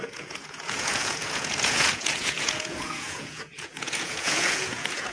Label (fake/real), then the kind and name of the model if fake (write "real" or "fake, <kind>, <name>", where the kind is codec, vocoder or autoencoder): fake, vocoder, Vocos